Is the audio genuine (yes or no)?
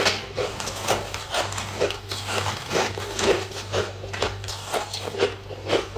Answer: no